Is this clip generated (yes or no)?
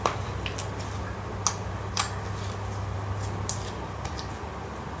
no